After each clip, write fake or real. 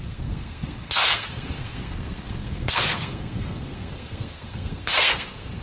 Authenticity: fake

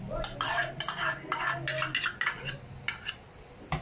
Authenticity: real